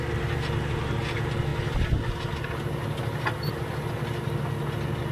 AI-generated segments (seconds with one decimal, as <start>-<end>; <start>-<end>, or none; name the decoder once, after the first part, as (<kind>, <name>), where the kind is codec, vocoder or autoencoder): none

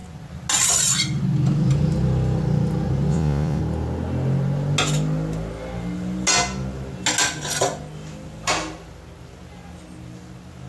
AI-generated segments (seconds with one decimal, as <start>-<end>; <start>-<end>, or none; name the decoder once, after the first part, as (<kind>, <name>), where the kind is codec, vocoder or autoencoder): 3.1-3.6 (vocoder, Vocos)

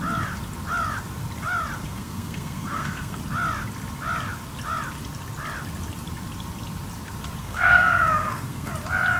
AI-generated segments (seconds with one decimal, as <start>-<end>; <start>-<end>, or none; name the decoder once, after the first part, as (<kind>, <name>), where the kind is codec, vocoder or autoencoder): 1.8-3.2 (codec, SNAC); 7.4-8.7

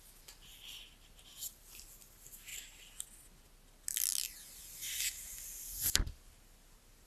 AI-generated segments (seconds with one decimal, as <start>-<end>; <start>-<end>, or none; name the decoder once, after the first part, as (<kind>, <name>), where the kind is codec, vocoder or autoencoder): none

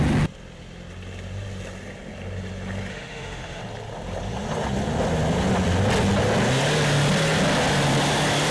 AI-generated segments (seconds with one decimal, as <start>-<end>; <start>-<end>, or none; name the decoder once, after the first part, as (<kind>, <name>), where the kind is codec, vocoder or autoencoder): 2.9-3.6 (autoencoder, DAC-VAE)

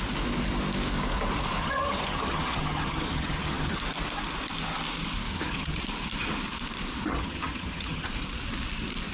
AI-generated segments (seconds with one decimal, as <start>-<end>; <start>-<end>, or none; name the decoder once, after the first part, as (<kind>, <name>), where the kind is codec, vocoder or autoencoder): 1.6-3.8 (vocoder, HiFi-GAN); 5.3-5.8; 7.1-8.1